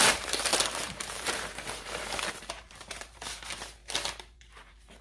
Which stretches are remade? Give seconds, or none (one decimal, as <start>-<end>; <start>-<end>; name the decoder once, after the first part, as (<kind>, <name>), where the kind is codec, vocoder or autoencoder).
0.0-3.8 (vocoder, BigVGAN v2); 4.4-5.0